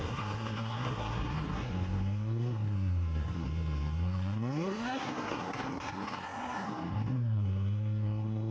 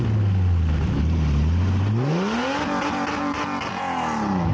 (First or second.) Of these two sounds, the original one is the second